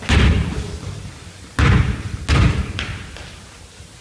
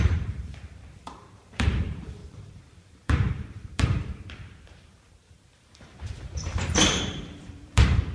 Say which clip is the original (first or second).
first